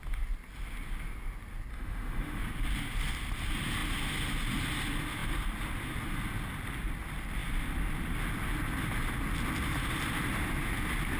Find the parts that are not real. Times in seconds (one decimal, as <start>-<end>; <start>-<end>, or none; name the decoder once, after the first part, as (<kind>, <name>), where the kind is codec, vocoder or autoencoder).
1.7-2.4 (autoencoder, DAC-VAE)